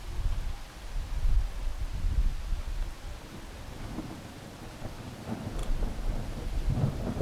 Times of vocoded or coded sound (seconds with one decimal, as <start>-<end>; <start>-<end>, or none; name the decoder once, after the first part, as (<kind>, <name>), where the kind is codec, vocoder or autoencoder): 0.0-1.7 (vocoder, BigVGAN v2); 3.9-5.6; 6.4-7.2